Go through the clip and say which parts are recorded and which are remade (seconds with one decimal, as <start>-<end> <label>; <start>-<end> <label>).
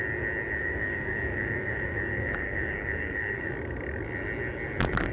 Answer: 0.0-0.6 recorded; 0.6-3.5 remade; 3.5-5.1 recorded